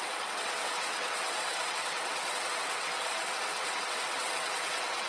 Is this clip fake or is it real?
fake